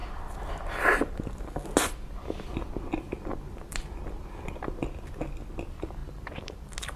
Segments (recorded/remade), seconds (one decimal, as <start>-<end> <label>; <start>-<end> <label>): 0.0-7.0 recorded